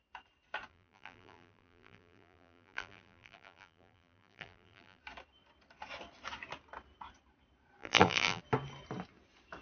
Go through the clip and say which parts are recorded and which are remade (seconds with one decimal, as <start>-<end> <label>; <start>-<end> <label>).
0.0-0.7 recorded; 0.7-5.0 remade; 5.0-7.8 recorded; 7.8-8.4 remade; 8.4-9.6 recorded